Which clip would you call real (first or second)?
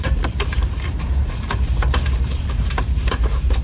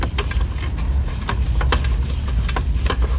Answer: second